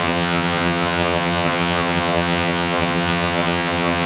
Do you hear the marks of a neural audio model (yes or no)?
yes